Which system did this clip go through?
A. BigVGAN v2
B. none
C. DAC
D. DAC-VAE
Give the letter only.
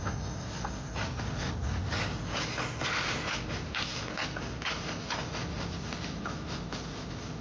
B